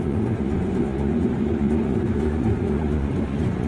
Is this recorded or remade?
remade